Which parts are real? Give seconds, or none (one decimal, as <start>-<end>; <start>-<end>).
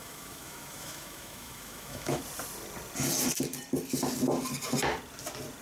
2.2-5.6